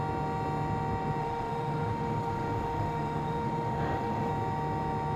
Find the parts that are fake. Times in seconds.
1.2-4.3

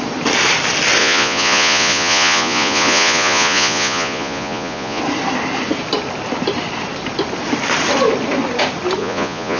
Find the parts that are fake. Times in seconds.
1.0-5.0; 9.0-9.6

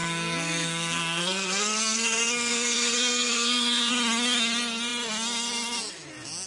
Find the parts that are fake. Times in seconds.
0.0-3.9

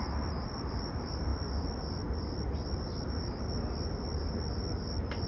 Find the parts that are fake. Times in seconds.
none

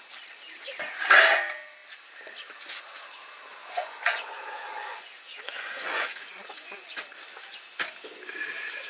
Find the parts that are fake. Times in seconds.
3.6-6.7